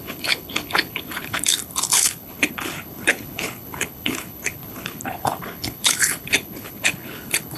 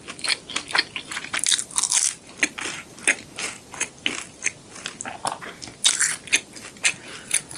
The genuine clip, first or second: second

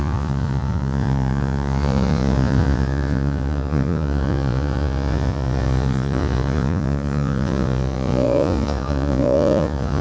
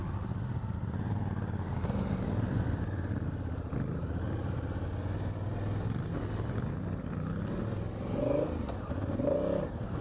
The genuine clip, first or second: second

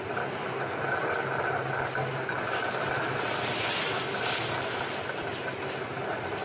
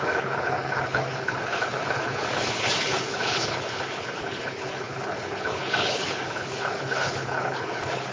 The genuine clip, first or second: first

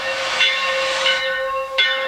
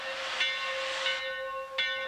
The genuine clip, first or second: second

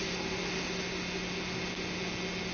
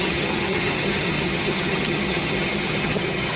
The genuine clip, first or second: first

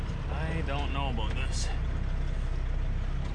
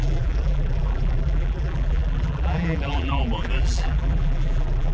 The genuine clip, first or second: first